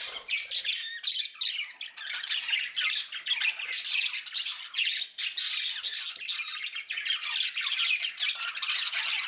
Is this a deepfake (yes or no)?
no